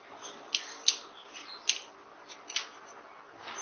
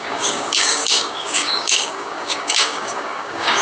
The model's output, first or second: second